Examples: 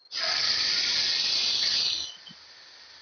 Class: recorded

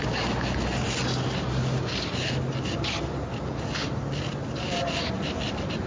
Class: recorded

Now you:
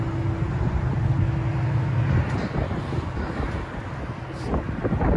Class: recorded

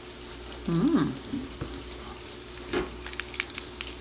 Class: recorded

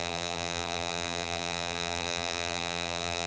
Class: remade